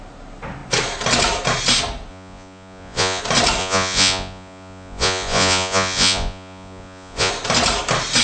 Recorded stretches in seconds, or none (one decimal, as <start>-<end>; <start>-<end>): 0.0-2.1; 3.2-3.6; 7.3-8.2